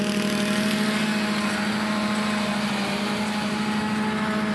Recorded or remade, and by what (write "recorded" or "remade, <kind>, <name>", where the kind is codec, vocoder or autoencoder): recorded